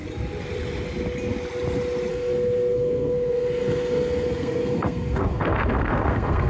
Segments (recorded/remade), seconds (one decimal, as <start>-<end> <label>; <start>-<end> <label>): 0.0-2.1 recorded; 2.1-6.5 remade